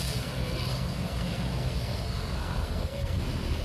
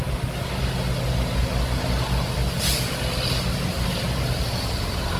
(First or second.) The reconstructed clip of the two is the first